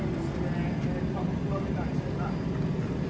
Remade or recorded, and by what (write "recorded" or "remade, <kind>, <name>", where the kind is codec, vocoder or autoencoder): recorded